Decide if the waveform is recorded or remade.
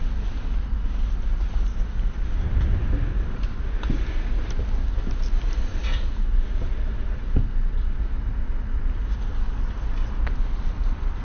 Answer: recorded